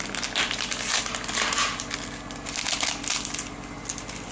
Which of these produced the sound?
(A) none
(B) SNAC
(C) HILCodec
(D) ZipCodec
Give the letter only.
A